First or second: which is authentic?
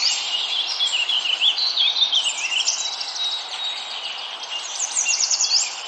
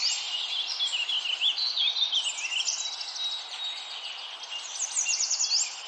second